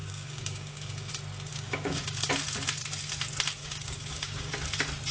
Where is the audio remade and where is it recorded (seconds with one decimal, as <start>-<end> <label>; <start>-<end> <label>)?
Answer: 0.0-1.1 remade; 1.1-1.5 recorded; 1.5-2.3 remade; 2.3-3.6 recorded; 3.6-4.5 remade; 4.5-5.1 recorded